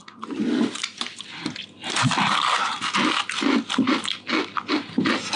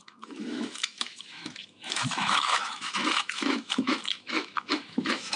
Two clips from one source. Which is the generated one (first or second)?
second